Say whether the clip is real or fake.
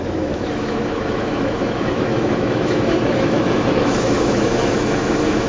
fake